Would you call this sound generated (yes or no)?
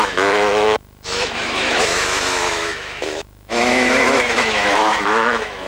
yes